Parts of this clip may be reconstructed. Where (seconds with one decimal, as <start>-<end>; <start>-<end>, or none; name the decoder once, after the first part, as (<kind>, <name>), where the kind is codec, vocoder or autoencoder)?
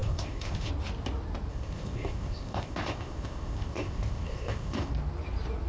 0.0-0.7 (codec, ZipCodec); 1.5-4.9